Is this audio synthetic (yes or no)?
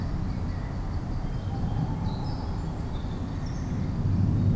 no